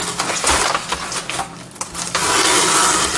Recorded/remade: recorded